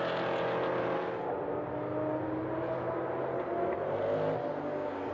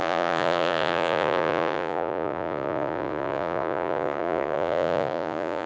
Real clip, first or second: first